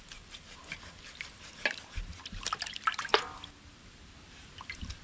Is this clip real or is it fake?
real